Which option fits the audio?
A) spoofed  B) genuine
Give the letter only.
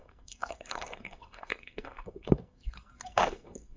A